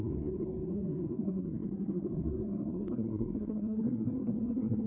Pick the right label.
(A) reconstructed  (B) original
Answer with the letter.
A